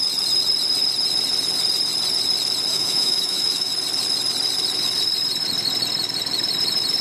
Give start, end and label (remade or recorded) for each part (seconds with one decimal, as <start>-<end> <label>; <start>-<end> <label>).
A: 0.0-2.7 recorded; 2.7-3.7 remade; 3.7-7.0 recorded